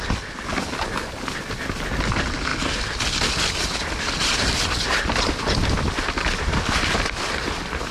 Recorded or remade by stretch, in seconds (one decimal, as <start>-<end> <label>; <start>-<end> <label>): 0.0-7.9 recorded